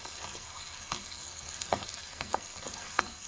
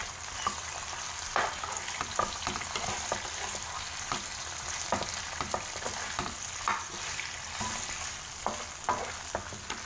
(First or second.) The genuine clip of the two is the second